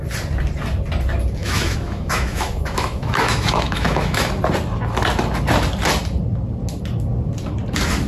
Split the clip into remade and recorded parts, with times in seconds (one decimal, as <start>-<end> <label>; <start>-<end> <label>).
0.0-1.4 recorded; 1.4-4.3 remade; 4.3-8.1 recorded